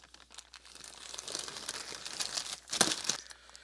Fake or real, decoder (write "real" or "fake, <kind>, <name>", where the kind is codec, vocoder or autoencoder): real